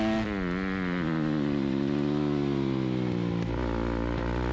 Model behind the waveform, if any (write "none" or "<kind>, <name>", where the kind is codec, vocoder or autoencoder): none